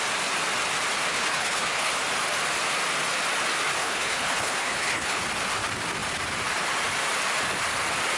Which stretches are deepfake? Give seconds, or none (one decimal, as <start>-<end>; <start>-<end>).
1.1-1.9; 3.8-5.2